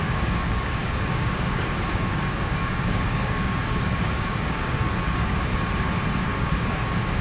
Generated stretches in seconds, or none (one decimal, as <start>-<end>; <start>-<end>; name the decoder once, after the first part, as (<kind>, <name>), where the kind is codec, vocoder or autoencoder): 0.0-5.5 (codec, DAC); 6.2-7.2